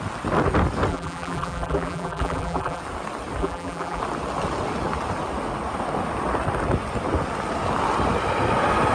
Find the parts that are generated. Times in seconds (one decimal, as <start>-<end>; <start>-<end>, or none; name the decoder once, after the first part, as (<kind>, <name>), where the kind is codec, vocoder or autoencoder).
0.9-2.8 (vocoder, BigVGAN v2); 3.4-4.0